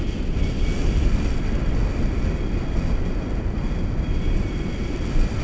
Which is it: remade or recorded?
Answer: recorded